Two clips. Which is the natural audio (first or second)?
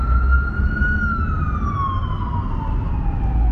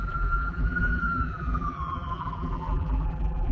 first